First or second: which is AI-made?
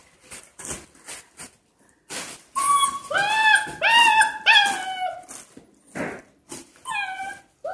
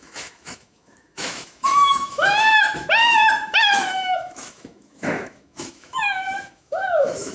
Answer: second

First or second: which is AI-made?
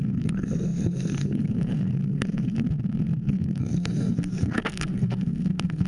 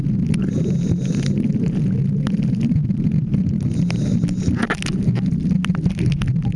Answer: first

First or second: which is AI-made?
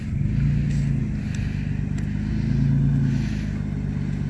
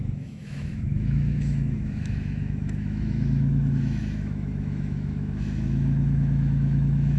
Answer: second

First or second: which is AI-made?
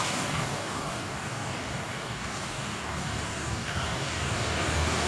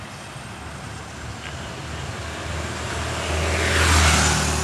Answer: first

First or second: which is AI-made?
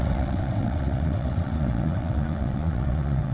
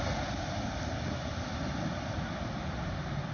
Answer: first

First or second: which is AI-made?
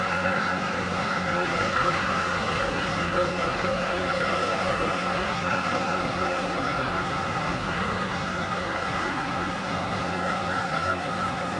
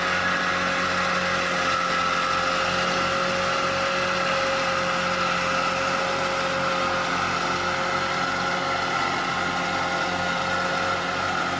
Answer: first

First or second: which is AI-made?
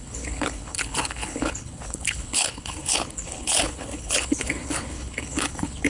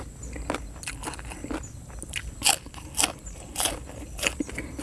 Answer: first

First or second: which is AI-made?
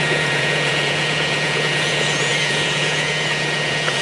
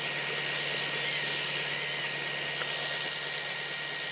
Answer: first